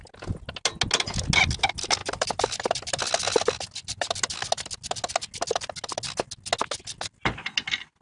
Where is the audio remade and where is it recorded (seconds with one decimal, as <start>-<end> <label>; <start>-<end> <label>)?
0.0-2.0 recorded; 2.0-3.0 remade; 3.0-8.0 recorded